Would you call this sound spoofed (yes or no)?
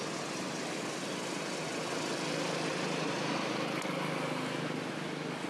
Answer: no